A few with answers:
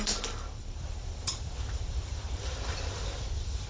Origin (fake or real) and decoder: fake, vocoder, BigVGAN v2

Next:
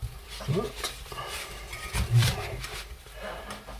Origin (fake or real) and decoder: fake, vocoder, BigVGAN v2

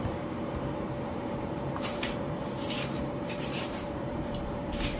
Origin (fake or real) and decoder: fake, vocoder, BigVGAN v2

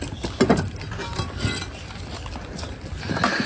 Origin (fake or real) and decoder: real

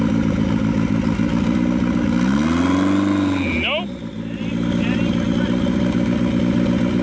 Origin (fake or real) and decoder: real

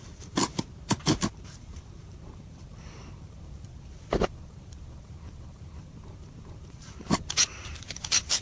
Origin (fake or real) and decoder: fake, vocoder, BigVGAN v2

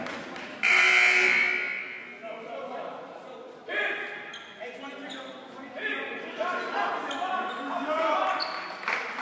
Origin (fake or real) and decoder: real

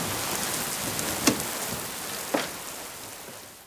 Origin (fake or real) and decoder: real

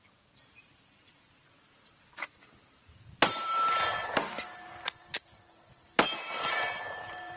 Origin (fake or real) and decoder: fake, vocoder, BigVGAN v2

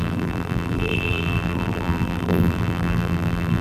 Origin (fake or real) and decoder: fake, vocoder, BigVGAN v2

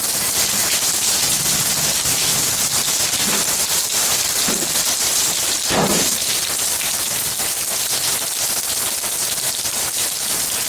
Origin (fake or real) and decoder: fake, vocoder, BigVGAN v2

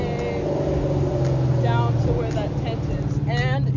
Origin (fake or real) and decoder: real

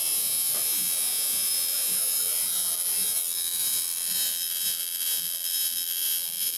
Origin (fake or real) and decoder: fake, vocoder, BigVGAN v2